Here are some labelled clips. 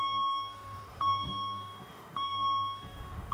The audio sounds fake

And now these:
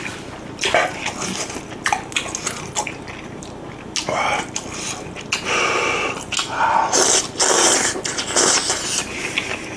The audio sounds real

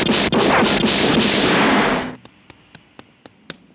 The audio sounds real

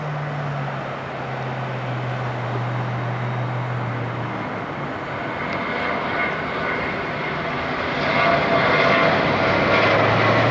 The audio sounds real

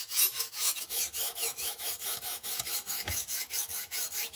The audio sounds fake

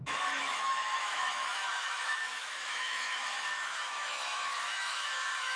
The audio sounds fake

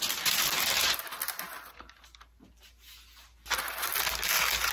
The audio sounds real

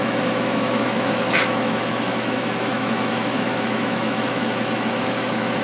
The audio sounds fake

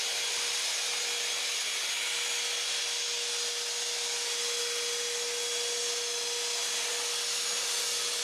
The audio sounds real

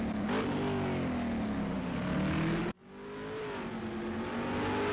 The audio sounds real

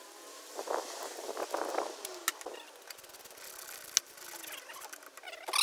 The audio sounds real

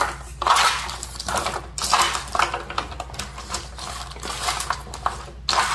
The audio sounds real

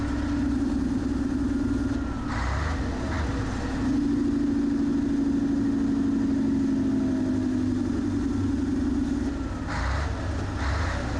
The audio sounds real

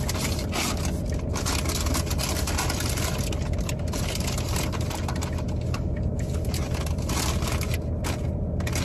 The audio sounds real